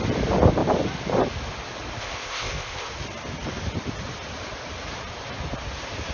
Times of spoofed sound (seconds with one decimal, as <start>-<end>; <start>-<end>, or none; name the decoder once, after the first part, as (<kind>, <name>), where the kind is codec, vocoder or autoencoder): 2.0-2.9 (codec, ZipCodec)